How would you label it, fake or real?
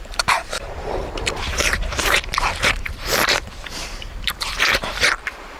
fake